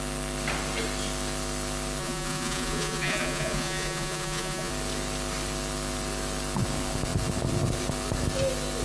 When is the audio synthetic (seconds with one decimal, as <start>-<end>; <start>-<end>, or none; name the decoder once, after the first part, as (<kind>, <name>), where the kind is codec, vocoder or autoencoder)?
2.0-4.7 (vocoder, Vocos)